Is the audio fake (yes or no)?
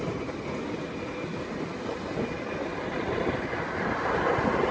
no